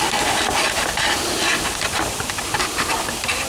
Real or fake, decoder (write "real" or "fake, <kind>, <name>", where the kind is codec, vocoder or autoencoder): real